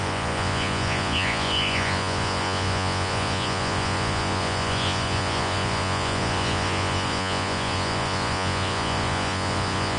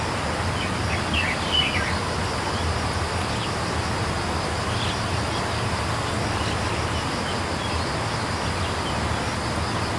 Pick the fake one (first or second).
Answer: first